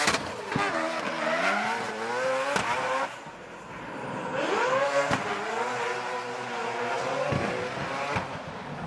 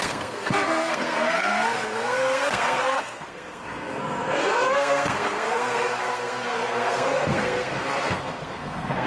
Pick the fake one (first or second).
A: second